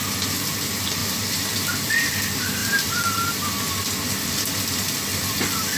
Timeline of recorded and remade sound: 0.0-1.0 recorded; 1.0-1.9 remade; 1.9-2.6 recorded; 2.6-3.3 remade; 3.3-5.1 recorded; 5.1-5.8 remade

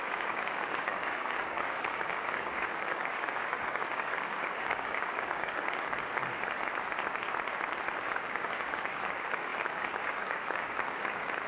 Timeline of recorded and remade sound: 0.0-6.2 remade; 6.2-8.0 recorded; 8.0-11.5 remade

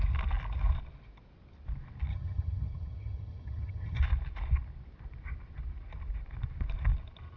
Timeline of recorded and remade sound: 0.0-2.1 recorded; 2.1-4.0 remade; 4.0-7.4 recorded

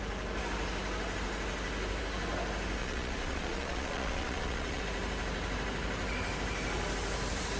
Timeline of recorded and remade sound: 0.0-2.8 recorded; 2.8-4.8 remade; 4.8-7.6 recorded

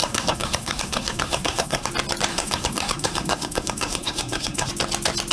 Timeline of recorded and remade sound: 0.0-1.9 remade; 1.9-2.3 recorded; 2.3-4.7 remade; 4.7-5.3 recorded

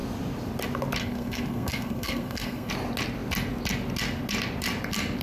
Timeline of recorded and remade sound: 0.0-1.0 recorded; 1.0-2.7 remade; 2.7-5.2 recorded

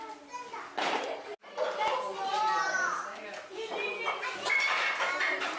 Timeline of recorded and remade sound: 0.0-5.6 recorded

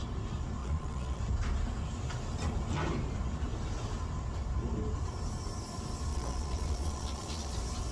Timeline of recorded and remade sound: 0.0-0.6 recorded; 0.6-1.2 remade; 1.2-6.1 recorded; 6.1-7.5 remade; 7.5-7.9 recorded